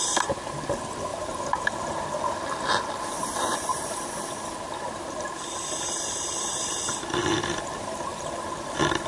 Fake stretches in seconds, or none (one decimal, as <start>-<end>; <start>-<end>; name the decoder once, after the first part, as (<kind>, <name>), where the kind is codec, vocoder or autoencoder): 0.0-1.1 (vocoder, BigVGAN v2); 1.9-3.7; 4.2-9.1